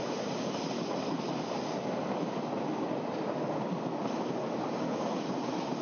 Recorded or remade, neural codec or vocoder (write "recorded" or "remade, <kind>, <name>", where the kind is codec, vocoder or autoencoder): recorded